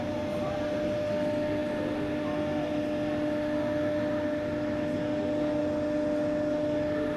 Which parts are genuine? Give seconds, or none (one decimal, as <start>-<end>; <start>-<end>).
0.0-7.2